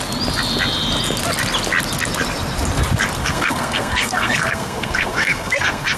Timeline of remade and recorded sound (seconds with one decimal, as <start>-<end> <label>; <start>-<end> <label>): 0.0-3.2 recorded; 3.2-6.0 remade